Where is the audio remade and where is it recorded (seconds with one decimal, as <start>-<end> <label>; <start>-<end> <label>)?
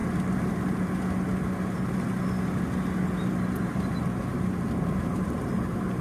0.0-3.6 recorded; 3.6-6.0 remade